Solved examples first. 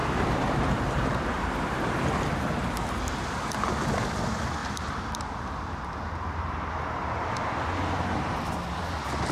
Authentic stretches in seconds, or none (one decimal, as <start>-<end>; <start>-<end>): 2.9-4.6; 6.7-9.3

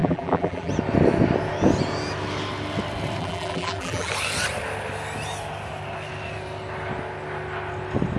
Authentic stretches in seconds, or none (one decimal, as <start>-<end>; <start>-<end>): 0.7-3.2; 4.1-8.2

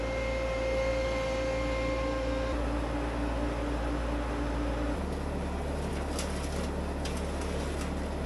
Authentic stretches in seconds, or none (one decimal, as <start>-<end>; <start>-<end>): 0.0-8.3

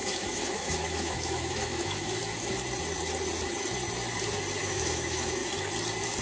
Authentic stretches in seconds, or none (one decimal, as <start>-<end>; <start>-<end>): 2.2-4.6; 5.4-6.2

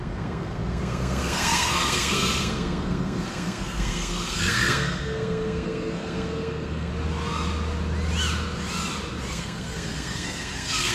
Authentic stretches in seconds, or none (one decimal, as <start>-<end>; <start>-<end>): 6.9-9.3

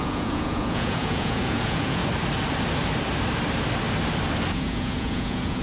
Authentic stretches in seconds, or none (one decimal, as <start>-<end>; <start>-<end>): 2.0-4.5

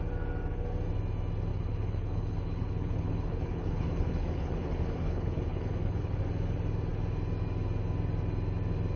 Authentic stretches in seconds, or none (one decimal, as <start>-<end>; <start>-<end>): 0.0-1.5; 6.2-9.0